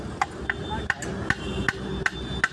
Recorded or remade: recorded